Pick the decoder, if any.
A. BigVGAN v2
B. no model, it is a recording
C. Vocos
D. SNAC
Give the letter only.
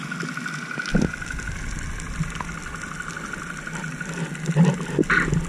B